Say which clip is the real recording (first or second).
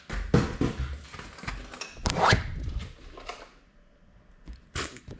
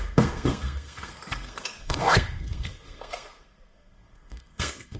first